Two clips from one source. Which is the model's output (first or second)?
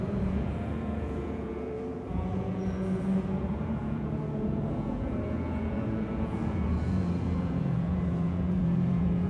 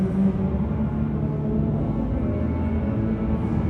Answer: first